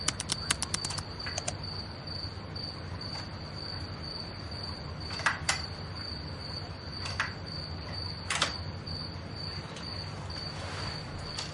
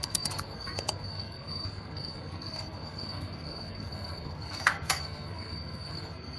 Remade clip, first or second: second